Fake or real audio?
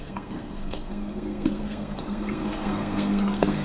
fake